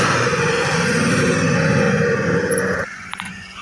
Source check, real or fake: fake